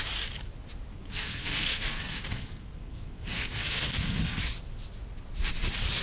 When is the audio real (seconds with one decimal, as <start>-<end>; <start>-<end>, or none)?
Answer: 0.0-0.9; 4.4-6.0